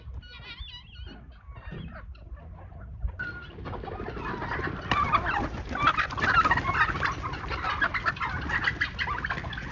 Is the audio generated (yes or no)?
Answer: no